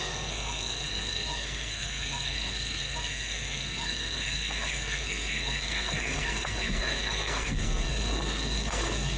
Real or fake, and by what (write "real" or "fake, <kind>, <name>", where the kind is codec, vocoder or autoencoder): fake, codec, SNAC